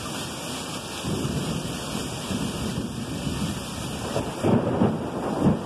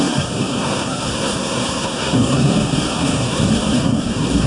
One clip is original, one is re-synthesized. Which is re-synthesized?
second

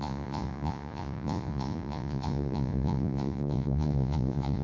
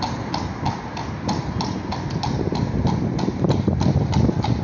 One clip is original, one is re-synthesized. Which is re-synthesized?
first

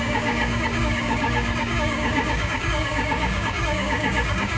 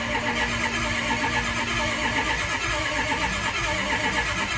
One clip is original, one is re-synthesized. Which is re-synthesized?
first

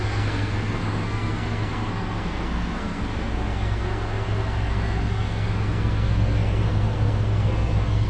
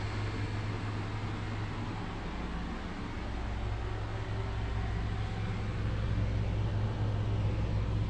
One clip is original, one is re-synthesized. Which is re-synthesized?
first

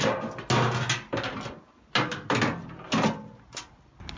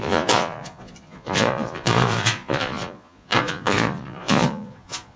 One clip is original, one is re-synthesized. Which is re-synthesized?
second